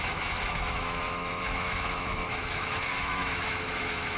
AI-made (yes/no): yes